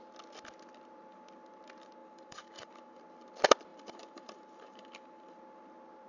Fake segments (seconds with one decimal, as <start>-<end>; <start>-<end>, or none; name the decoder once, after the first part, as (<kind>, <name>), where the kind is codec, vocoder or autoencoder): 2.0-3.0 (vocoder, BigVGAN v2); 3.7-5.4